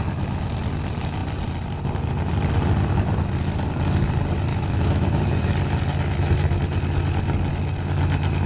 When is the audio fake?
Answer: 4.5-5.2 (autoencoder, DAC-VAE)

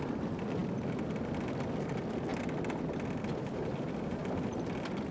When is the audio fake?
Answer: none